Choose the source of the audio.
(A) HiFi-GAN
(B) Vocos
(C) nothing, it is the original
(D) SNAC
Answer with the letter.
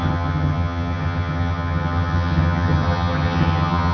A